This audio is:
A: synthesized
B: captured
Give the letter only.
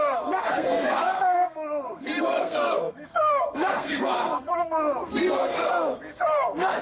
A